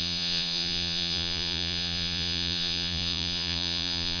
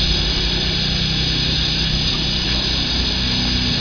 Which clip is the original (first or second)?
second